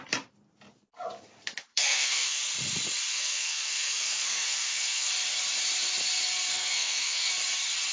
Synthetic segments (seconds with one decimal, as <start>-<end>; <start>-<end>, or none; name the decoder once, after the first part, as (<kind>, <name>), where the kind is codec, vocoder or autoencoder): 1.7-2.4 (codec, SNAC); 3.1-5.1; 6.5-7.3

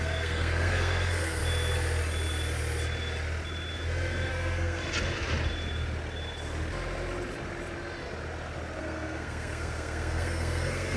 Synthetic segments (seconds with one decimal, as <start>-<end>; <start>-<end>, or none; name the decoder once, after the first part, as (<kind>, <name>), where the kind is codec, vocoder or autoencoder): 0.0-1.4 (codec, SNAC); 4.3-4.8; 8.8-11.0

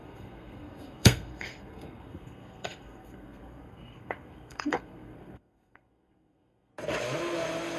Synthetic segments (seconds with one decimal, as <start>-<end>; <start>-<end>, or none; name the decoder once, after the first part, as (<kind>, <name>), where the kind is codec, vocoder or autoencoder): 0.0-6.7 (codec, SNAC)

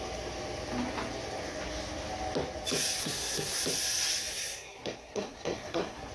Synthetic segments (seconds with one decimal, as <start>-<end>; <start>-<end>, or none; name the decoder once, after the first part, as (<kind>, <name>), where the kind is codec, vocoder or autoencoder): 3.0-3.6 (codec, SNAC); 4.3-6.1

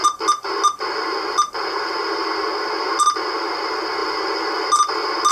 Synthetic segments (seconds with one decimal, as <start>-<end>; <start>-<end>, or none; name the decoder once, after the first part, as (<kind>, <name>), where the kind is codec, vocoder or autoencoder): none

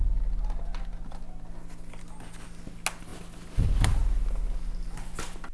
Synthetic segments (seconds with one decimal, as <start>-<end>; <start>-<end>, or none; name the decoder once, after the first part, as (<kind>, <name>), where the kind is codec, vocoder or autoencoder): none

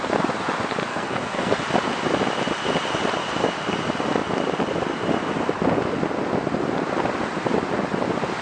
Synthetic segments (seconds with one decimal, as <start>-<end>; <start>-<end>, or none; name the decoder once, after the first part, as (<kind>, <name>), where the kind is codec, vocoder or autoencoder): 0.9-1.6 (codec, SNAC)

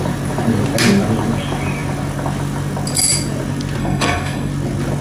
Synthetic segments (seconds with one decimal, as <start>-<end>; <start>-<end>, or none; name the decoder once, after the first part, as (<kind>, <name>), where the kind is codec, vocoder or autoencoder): 3.8-4.5 (codec, SNAC)